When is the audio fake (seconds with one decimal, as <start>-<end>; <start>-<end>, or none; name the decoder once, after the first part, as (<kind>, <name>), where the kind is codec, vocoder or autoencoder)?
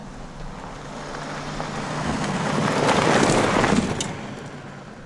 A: 1.8-2.5 (codec, SNAC)